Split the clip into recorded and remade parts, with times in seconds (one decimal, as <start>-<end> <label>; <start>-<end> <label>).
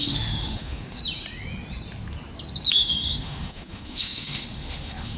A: 0.0-1.0 remade; 1.0-2.7 recorded; 2.7-5.2 remade